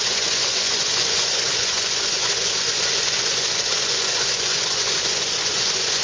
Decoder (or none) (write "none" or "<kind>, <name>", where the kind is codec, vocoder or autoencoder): vocoder, Vocos